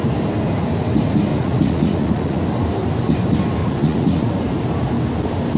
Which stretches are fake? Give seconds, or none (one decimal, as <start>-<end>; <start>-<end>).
1.3-2.4; 3.6-4.3